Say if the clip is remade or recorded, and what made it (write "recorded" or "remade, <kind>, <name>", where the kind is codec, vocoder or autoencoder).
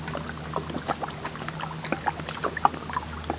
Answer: recorded